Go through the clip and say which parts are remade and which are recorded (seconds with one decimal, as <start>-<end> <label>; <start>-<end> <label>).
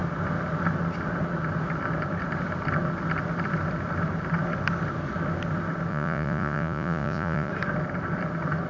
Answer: 0.0-5.9 recorded; 5.9-7.5 remade; 7.5-8.7 recorded